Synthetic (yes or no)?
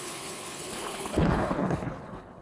yes